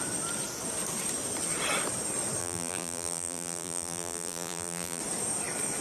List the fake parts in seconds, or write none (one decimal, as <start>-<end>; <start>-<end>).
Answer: 2.4-5.0